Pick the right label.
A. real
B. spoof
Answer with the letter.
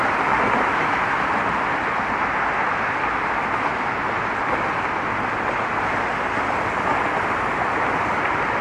A